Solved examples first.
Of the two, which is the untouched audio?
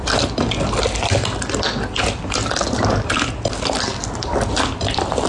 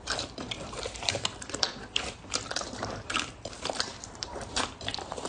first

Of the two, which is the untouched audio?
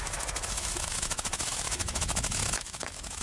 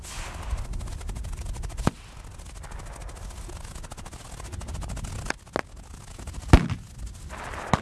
second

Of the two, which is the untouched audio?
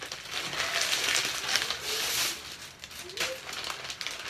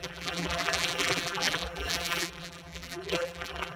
first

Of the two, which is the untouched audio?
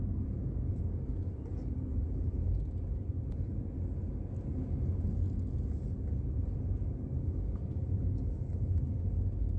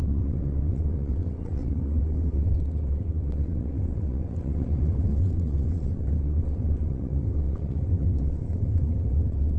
first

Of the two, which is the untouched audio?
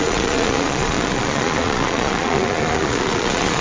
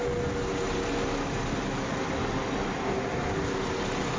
second